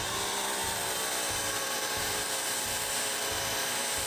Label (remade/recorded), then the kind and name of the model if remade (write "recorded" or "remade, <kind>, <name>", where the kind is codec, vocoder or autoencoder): remade, vocoder, BigVGAN v2